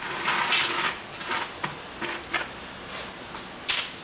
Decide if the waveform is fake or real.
real